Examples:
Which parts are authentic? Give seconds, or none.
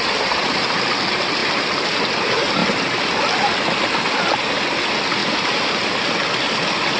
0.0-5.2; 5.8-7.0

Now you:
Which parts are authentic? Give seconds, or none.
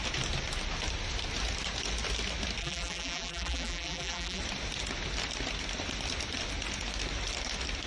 0.0-2.6; 4.4-7.9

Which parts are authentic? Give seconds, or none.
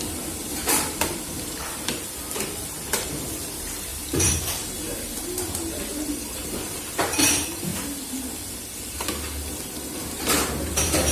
7.7-9.5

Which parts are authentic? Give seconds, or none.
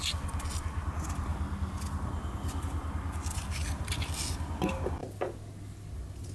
0.0-1.3; 2.6-3.4; 4.0-6.3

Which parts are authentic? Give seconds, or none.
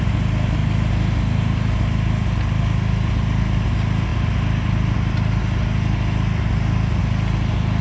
0.0-7.8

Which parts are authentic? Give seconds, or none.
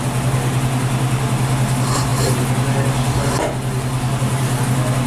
0.0-5.1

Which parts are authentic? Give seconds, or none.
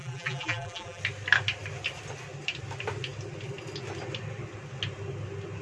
1.0-5.6